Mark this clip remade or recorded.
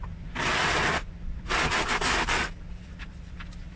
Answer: remade